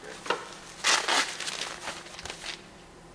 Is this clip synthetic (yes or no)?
no